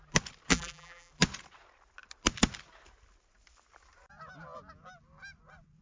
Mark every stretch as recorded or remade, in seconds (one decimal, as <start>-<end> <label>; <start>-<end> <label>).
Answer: 0.0-0.5 recorded; 0.5-1.1 remade; 1.1-5.8 recorded